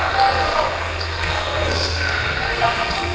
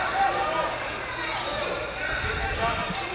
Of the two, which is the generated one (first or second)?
first